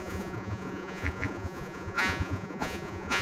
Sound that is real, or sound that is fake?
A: fake